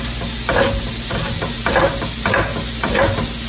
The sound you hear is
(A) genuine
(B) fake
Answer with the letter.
A